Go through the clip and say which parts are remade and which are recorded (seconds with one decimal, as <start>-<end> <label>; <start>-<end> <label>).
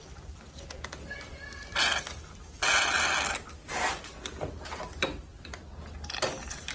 0.0-6.7 recorded